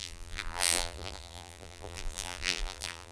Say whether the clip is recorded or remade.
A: remade